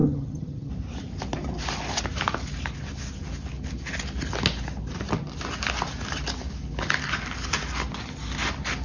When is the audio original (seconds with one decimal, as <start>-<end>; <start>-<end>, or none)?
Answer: 0.7-8.8